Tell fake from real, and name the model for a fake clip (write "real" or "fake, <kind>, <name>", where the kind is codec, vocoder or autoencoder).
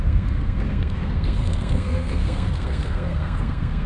fake, codec, SNAC